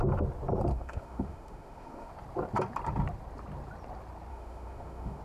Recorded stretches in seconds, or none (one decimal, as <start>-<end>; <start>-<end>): 0.0-0.7; 2.1-4.3